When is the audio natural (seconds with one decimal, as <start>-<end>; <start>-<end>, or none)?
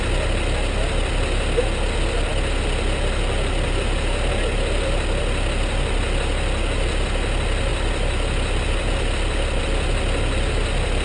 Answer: 0.0-11.0